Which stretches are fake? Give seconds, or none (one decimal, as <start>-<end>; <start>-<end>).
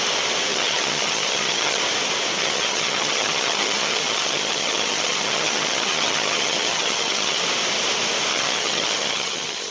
0.5-1.8; 2.4-7.4; 8.3-9.7